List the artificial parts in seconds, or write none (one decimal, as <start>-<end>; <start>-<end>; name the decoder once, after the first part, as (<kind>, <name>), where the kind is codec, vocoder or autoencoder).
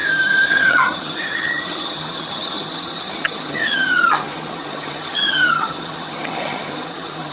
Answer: 0.5-7.3 (vocoder, HiFi-GAN)